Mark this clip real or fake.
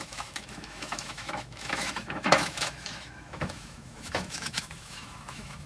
fake